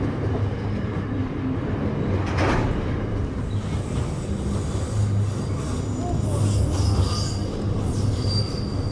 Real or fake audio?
real